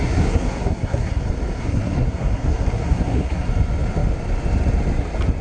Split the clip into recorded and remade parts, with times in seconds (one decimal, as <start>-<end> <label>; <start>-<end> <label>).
0.0-1.2 remade; 1.2-1.6 recorded; 1.6-3.5 remade; 3.5-5.4 recorded